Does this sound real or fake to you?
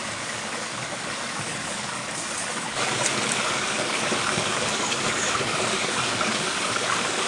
fake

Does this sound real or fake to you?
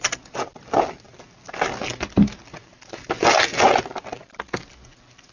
real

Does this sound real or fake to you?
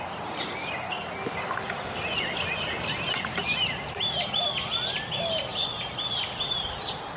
real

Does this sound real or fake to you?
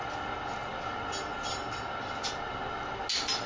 real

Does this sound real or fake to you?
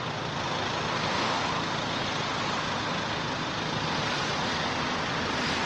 real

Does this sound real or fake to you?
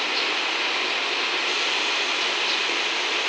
real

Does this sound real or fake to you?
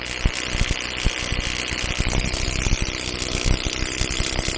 real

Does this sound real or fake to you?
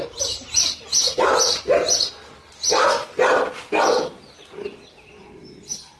real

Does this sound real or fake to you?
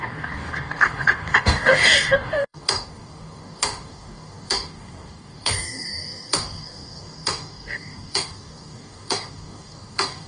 fake